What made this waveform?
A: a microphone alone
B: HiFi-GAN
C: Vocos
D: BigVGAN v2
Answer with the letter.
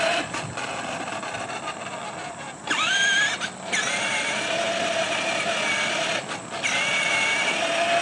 A